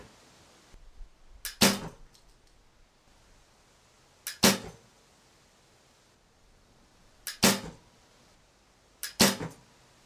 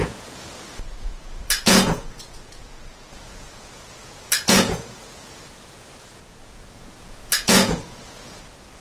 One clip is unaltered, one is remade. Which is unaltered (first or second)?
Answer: first